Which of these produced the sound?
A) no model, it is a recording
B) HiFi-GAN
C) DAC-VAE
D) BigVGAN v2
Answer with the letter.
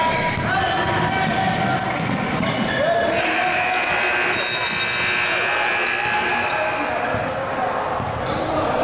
A